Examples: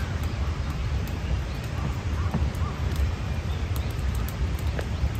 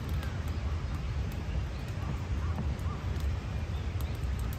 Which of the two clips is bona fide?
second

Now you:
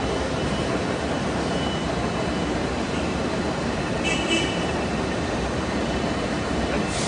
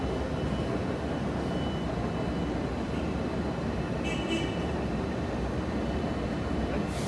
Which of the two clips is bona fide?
second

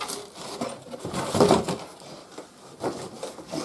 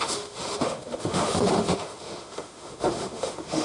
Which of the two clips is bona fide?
first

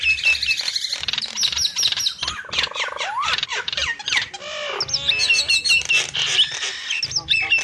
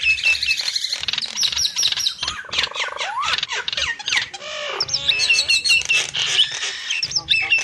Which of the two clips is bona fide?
first